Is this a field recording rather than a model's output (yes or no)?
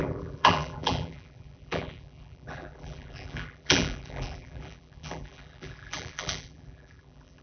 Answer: no